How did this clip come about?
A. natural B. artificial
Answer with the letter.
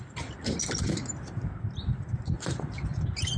A